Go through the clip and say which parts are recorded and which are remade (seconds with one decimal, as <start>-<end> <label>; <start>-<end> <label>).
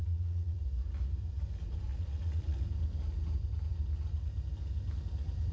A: 0.0-0.6 remade; 0.6-1.9 recorded; 1.9-2.6 remade; 2.6-5.5 recorded